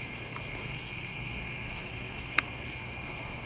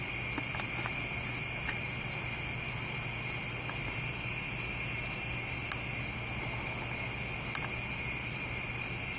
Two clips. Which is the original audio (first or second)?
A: second